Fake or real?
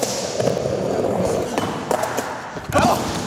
real